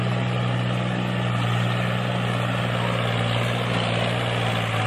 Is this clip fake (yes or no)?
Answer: no